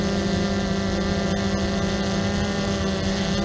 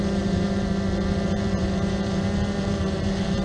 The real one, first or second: first